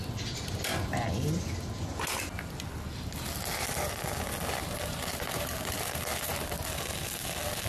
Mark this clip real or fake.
real